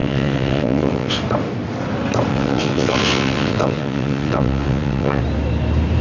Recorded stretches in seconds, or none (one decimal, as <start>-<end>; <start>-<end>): 1.2-2.3; 5.2-6.0